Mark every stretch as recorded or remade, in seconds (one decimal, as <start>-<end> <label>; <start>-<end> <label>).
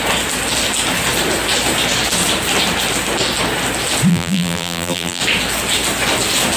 0.0-4.1 recorded; 4.1-5.2 remade; 5.2-6.6 recorded